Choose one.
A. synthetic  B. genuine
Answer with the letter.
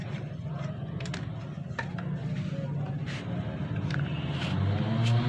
B